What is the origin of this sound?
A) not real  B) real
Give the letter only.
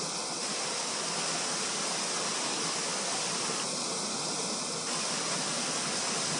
B